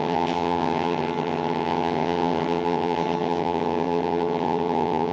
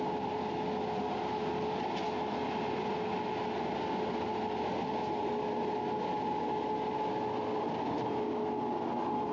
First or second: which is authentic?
second